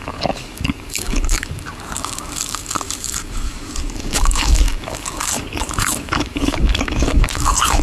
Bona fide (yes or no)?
no